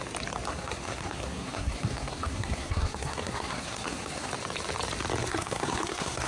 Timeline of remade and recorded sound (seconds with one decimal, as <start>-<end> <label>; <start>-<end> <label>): 0.0-0.5 recorded; 0.5-4.3 remade; 4.3-5.2 recorded; 5.2-6.3 remade